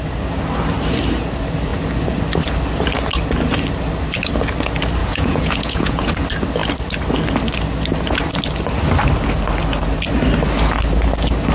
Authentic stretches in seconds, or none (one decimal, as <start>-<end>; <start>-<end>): 0.0-5.0; 6.1-11.5